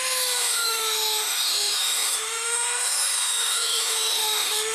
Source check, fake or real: fake